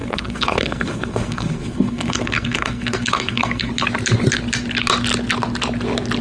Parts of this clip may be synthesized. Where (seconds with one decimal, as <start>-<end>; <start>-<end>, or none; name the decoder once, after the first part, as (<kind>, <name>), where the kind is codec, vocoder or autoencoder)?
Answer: 0.0-3.7 (codec, SNAC)